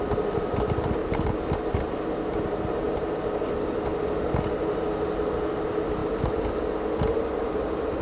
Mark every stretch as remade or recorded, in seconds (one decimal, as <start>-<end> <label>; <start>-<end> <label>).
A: 0.0-1.0 recorded; 1.0-3.2 remade; 3.2-8.0 recorded